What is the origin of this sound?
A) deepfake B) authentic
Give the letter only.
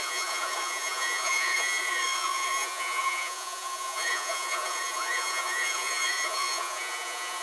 A